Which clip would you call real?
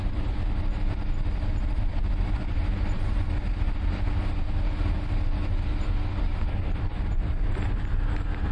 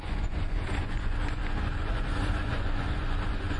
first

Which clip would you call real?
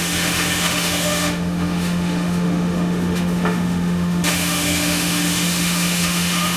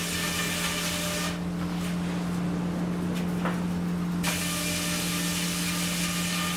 second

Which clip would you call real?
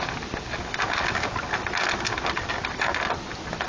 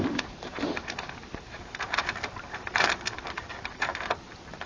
first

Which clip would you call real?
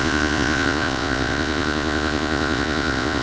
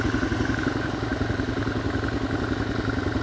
second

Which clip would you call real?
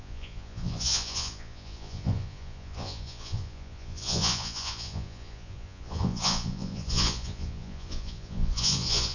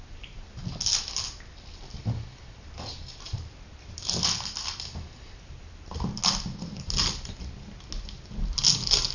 second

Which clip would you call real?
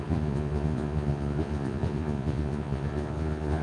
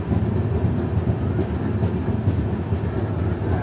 second